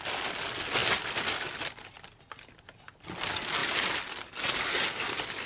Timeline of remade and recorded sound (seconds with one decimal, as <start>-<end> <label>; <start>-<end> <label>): 0.0-5.5 recorded